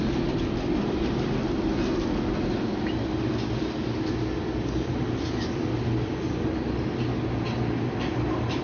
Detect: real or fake real